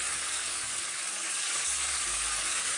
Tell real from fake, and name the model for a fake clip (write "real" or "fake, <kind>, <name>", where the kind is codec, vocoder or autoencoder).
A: fake, codec, DAC